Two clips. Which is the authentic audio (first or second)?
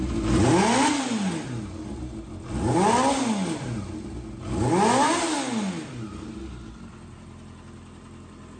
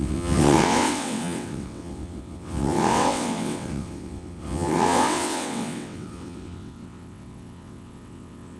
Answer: first